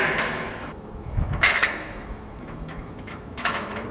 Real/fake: fake